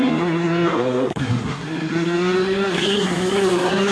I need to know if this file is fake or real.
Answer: fake